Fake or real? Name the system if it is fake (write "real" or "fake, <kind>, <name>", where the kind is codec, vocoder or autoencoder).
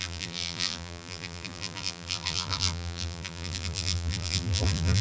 fake, vocoder, BigVGAN v2